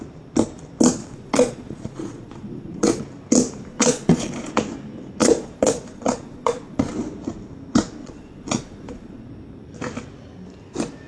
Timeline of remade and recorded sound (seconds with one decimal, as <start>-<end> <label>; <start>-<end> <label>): 0.0-1.0 recorded; 1.0-3.0 remade; 3.0-3.7 recorded; 3.7-4.5 remade; 4.5-5.2 recorded; 5.2-6.9 remade; 6.9-8.0 recorded; 8.0-9.3 remade; 9.3-11.1 recorded